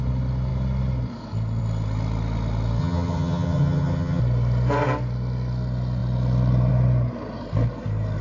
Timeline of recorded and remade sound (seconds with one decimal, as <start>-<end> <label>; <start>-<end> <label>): 0.0-2.8 recorded; 2.8-4.2 remade; 4.2-8.2 recorded